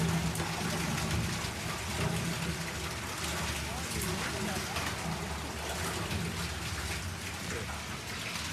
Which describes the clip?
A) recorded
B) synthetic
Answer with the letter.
A